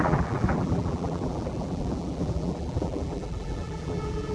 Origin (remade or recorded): remade